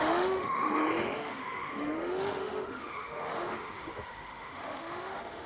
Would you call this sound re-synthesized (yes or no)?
yes